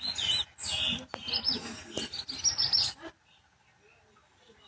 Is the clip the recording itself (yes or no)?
yes